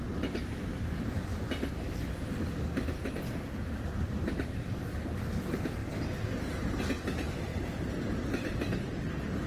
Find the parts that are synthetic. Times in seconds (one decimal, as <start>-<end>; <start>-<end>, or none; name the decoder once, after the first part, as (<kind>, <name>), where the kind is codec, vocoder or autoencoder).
none